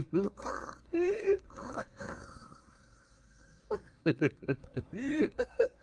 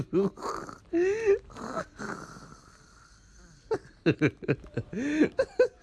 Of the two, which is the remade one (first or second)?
first